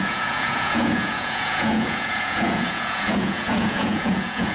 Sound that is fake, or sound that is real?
fake